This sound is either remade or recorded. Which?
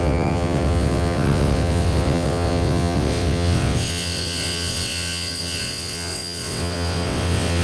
remade